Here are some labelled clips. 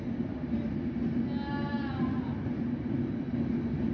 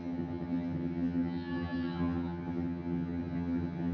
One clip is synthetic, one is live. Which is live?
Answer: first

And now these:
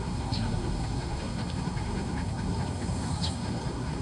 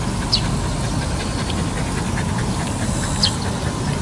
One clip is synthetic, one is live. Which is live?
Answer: second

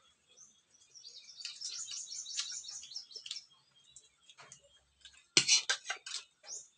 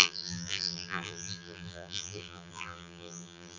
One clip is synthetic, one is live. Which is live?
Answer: first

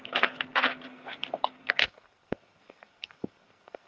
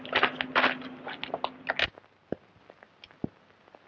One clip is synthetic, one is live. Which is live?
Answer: second